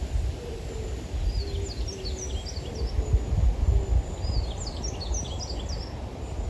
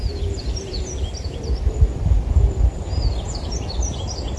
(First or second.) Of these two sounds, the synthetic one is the second